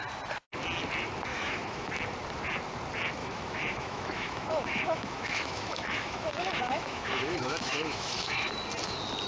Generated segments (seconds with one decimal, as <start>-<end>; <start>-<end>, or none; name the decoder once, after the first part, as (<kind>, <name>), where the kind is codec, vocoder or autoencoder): 1.3-1.9 (autoencoder, DAC-VAE); 3.2-8.5